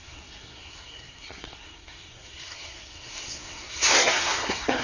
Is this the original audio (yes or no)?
no